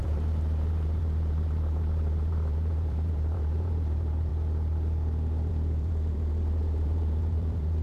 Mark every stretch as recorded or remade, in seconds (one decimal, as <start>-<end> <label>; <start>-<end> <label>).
0.0-4.3 remade; 4.3-5.5 recorded; 5.5-7.8 remade